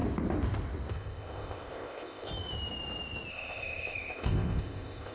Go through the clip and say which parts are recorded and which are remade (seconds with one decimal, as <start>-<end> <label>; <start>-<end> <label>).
0.0-0.9 recorded; 0.9-2.3 remade; 2.3-3.3 recorded; 3.3-5.1 remade